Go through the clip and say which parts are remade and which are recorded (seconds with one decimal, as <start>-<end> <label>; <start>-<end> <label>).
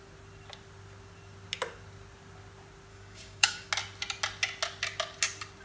0.0-2.9 recorded; 2.9-3.7 remade; 3.7-5.6 recorded